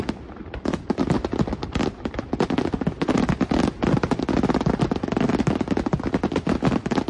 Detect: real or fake real